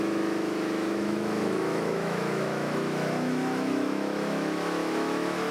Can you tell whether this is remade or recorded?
remade